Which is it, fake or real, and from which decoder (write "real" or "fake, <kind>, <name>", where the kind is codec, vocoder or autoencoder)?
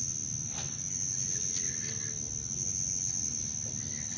real